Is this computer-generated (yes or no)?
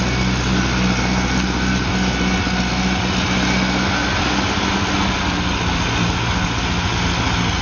no